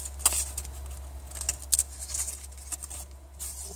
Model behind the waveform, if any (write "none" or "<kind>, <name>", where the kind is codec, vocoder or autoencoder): none